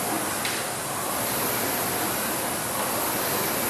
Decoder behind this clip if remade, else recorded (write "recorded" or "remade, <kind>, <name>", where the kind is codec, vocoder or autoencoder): recorded